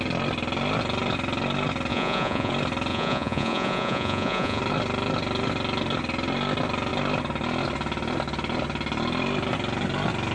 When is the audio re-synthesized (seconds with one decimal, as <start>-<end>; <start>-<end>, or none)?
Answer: 1.9-2.5; 2.9-4.6